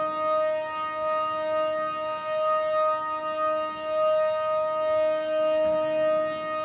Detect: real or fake real